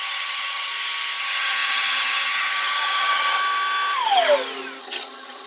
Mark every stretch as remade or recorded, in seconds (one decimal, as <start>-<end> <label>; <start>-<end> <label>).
0.0-0.7 remade; 0.7-1.2 recorded; 1.2-3.4 remade; 3.4-4.8 recorded; 4.8-5.5 remade